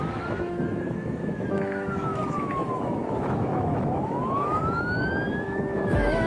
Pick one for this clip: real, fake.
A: fake